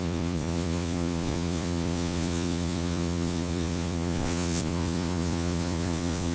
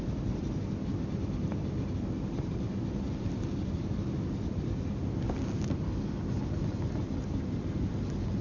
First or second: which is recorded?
second